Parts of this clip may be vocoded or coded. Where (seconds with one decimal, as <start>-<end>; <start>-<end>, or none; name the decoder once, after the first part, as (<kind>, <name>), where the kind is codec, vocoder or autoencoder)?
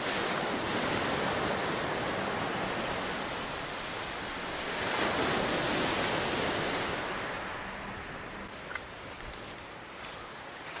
1.6-2.2 (vocoder, BigVGAN v2)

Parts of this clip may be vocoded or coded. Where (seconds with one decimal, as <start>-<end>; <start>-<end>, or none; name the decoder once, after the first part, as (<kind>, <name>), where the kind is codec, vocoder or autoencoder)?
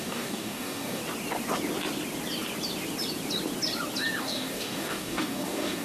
0.0-1.0 (codec, DAC); 4.2-5.8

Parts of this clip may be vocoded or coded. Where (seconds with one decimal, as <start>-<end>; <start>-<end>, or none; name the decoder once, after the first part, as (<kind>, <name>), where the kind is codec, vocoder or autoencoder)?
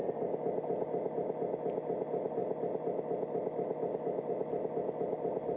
none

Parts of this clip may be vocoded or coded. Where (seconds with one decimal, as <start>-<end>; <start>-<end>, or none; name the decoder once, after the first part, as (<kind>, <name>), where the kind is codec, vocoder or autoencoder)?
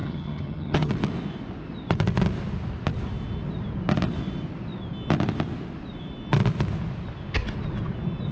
0.0-0.9 (vocoder, HiFi-GAN)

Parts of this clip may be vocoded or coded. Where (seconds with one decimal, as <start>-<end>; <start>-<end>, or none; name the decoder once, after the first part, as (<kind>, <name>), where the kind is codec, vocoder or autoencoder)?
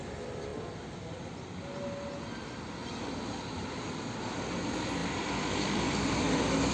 0.0-0.5 (vocoder, BigVGAN v2); 2.2-2.8; 4.2-6.7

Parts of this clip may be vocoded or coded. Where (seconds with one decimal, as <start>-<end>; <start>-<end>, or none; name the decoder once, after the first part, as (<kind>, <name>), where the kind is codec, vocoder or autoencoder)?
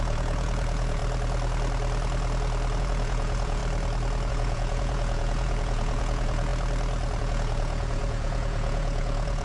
0.0-1.0 (vocoder, Vocos); 2.8-3.6; 4.3-6.5; 7.2-9.4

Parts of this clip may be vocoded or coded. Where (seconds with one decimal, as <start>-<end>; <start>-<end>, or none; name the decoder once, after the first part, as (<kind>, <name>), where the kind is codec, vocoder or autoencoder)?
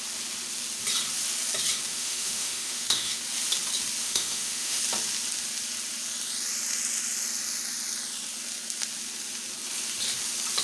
1.9-3.2 (autoencoder, DAC-VAE); 4.0-4.8